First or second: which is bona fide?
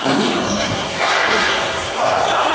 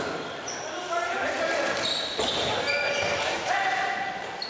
second